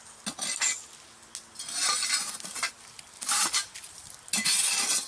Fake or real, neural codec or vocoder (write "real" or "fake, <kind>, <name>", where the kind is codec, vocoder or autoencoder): real